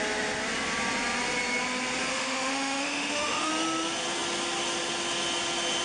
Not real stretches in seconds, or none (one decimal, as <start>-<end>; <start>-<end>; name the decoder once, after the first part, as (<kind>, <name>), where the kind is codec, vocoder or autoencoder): 2.1-3.5 (autoencoder, DAC-VAE)